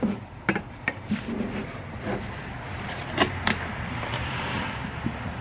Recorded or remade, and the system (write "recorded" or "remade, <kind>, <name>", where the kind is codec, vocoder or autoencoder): remade, vocoder, BigVGAN v2